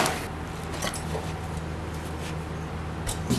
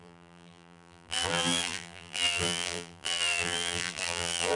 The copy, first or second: second